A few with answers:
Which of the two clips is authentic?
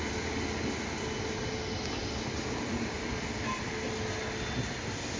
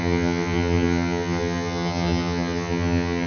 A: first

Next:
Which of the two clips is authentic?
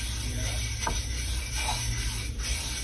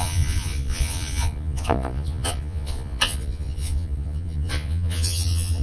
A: first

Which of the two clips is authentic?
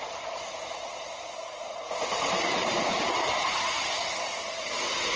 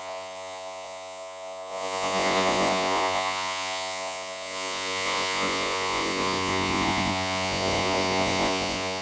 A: first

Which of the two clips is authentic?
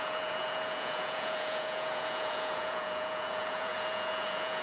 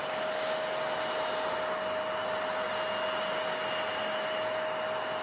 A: second